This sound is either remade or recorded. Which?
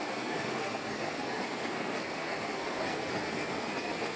remade